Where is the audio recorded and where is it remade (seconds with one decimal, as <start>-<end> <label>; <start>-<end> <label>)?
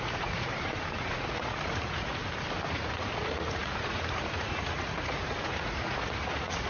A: 0.0-0.5 remade; 0.5-1.1 recorded; 1.1-2.2 remade; 2.2-2.7 recorded; 2.7-6.7 remade